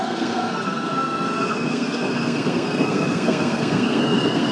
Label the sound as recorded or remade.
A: remade